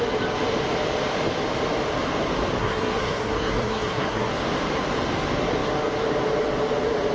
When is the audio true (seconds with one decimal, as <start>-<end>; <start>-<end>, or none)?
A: 0.0-2.6; 4.3-7.1